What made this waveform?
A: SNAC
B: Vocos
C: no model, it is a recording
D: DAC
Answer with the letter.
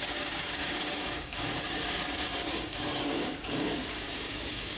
D